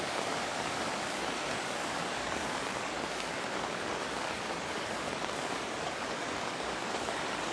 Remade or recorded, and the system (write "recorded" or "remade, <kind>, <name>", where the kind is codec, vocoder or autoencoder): remade, codec, DAC